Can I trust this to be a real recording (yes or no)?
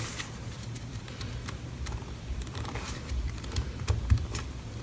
no